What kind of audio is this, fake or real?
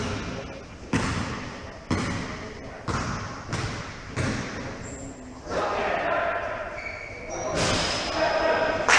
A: real